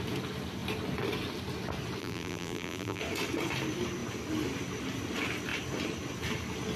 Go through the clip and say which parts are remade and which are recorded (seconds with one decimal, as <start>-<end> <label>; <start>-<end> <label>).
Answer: 0.0-2.0 recorded; 2.0-3.0 remade; 3.0-6.8 recorded